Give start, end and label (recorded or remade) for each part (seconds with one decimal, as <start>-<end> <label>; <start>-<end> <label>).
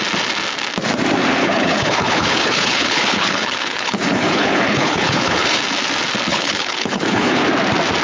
0.0-1.4 recorded; 1.4-5.6 remade; 5.6-6.3 recorded; 6.3-7.5 remade; 7.5-8.0 recorded